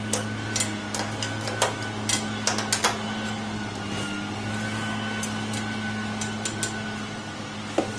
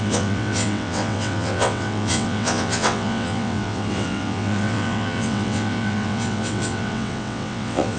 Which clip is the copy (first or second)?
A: second